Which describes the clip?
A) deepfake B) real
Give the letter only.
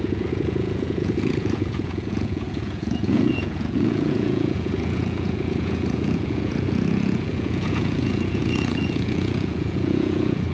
A